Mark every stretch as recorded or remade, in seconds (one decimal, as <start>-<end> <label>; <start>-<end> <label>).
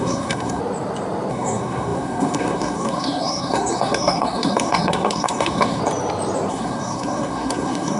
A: 0.0-0.6 remade; 0.6-1.3 recorded; 1.3-5.8 remade; 5.8-6.5 recorded; 6.5-8.0 remade